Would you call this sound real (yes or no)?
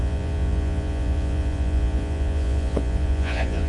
no